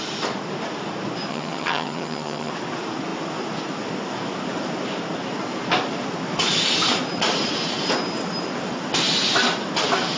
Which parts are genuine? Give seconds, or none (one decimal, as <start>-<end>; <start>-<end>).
0.0-1.3; 2.5-10.2